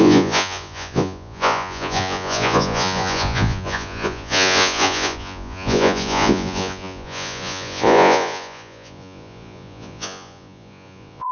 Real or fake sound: fake